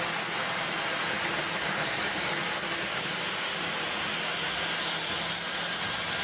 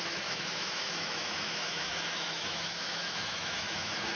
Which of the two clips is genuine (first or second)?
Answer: first